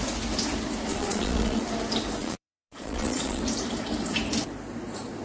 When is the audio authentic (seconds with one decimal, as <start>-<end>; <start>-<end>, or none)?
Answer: 0.0-0.9; 1.6-2.2; 3.4-5.2